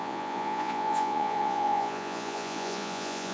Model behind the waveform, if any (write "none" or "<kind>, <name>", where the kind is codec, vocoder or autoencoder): vocoder, Vocos